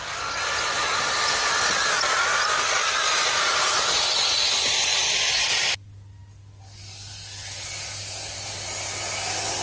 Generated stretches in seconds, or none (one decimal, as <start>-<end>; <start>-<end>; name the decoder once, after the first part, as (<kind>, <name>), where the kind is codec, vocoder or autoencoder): none